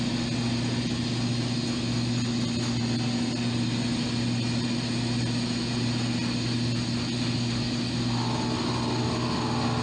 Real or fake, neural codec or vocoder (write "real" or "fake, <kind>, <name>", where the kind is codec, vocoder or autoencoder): real